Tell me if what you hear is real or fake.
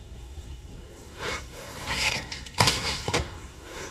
fake